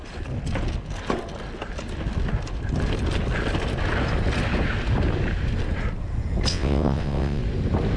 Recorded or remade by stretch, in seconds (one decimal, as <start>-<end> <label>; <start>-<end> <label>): 0.0-6.5 recorded; 6.5-7.4 remade; 7.4-8.0 recorded